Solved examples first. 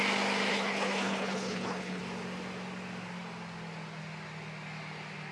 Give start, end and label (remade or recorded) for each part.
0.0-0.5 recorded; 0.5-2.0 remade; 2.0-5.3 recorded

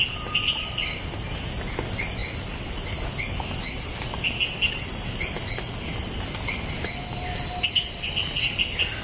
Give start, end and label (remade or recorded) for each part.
0.0-9.0 recorded

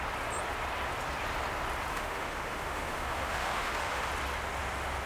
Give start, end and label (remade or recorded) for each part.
0.0-1.9 recorded; 1.9-4.1 remade; 4.1-5.1 recorded

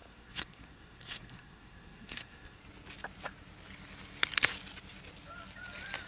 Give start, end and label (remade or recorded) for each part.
0.0-2.6 remade; 2.6-6.1 recorded

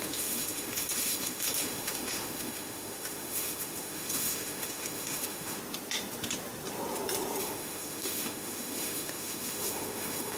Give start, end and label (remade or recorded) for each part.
0.0-5.6 remade; 5.6-7.4 recorded; 7.4-10.4 remade

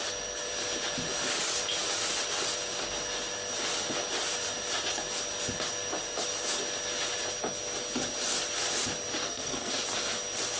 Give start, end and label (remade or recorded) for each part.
0.0-9.2 recorded; 9.2-9.7 remade; 9.7-10.6 recorded